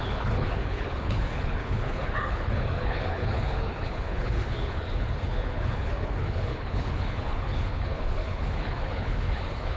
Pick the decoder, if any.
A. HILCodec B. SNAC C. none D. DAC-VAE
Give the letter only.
A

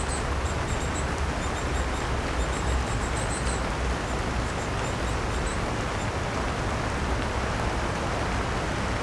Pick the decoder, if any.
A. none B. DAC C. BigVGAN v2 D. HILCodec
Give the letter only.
A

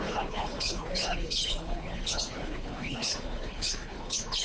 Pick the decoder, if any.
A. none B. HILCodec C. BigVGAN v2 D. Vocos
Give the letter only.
B